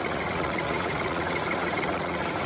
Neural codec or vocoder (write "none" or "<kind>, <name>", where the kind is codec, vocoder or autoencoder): vocoder, Vocos